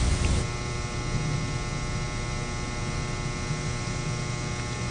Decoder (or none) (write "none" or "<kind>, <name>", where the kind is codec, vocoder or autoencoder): none